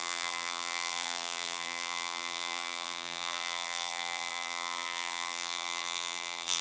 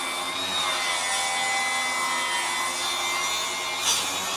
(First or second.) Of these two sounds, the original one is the second